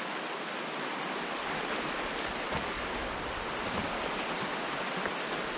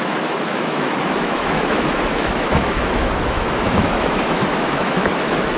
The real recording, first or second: first